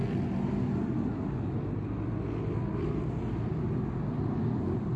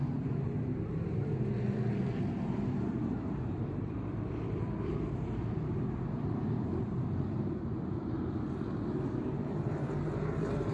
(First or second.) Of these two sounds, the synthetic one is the second